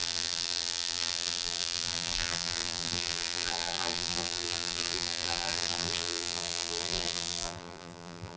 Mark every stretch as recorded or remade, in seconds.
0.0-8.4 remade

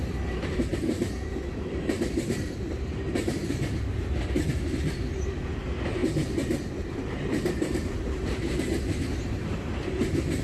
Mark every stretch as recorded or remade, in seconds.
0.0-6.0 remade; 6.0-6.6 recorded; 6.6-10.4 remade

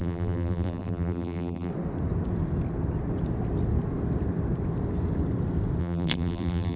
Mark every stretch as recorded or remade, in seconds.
0.0-1.7 remade; 1.7-5.8 recorded; 5.8-6.8 remade

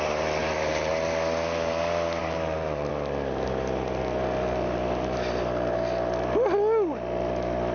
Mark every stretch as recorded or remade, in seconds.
0.0-0.4 recorded; 0.4-0.9 remade; 0.9-2.2 recorded; 2.2-2.9 remade; 2.9-7.7 recorded